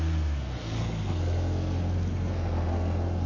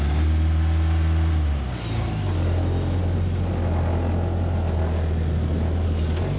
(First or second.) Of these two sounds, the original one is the second